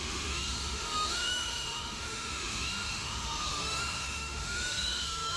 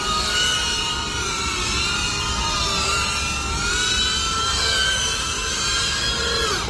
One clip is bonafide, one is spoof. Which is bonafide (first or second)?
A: second